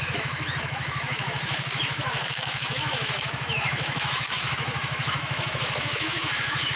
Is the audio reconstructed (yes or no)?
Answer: yes